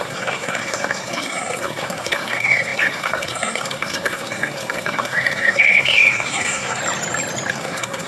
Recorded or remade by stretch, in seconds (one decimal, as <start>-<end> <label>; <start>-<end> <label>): 0.0-6.8 remade; 6.8-7.5 recorded; 7.5-8.1 remade